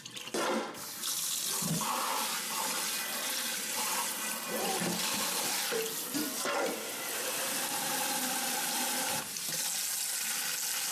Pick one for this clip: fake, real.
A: real